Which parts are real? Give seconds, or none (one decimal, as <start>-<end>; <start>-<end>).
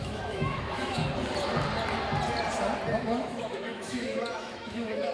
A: 1.0-3.0